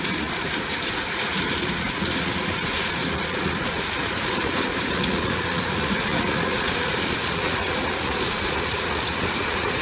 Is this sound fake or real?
fake